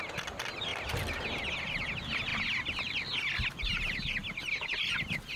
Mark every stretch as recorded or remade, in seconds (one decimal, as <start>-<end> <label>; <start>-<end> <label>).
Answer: 0.0-5.4 recorded